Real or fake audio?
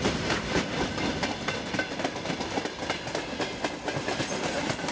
real